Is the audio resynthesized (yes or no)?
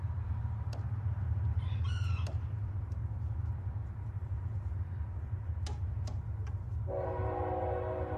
yes